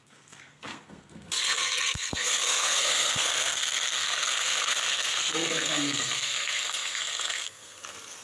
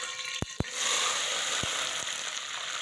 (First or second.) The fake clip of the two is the first